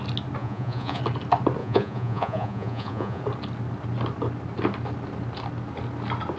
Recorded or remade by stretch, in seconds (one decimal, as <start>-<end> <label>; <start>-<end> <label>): 0.0-0.4 recorded; 0.4-1.0 remade; 1.0-1.6 recorded; 1.6-3.2 remade; 3.2-6.4 recorded